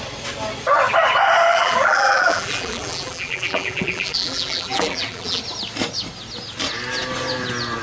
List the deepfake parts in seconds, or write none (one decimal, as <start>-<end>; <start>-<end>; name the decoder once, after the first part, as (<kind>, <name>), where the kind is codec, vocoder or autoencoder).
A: 1.5-5.4 (vocoder, BigVGAN v2)